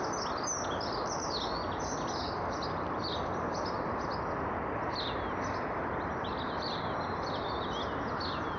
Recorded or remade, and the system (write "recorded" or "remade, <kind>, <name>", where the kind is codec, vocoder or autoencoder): recorded